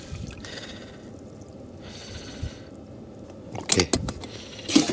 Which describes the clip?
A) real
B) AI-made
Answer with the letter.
A